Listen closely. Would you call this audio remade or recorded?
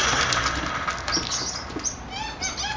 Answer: recorded